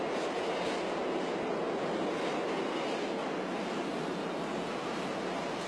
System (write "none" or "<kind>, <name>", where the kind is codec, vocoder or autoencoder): none